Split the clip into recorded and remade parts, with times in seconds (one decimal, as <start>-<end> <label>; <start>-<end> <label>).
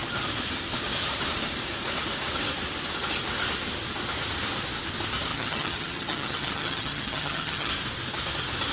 0.0-5.3 recorded; 5.3-7.7 remade; 7.7-8.7 recorded